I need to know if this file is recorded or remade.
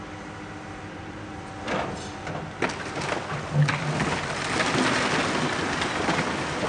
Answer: recorded